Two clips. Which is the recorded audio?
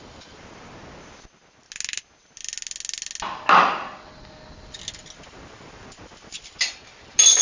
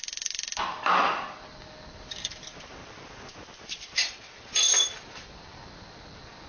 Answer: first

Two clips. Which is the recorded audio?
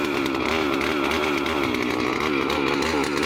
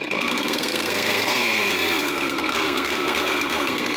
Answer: first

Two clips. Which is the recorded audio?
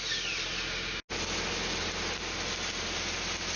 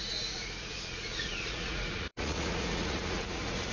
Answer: first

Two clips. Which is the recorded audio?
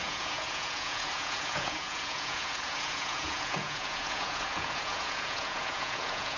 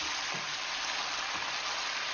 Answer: second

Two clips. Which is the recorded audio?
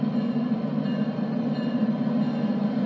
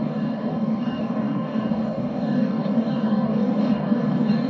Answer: first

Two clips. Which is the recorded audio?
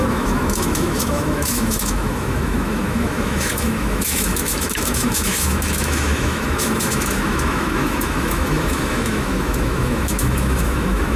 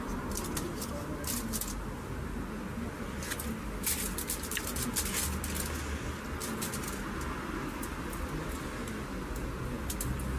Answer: second